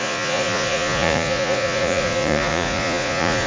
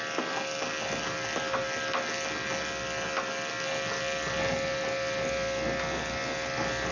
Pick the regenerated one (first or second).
first